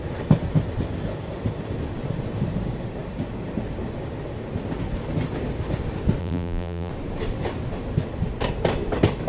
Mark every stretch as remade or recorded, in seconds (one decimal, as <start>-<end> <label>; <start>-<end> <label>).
0.0-6.2 recorded; 6.2-6.9 remade; 6.9-9.3 recorded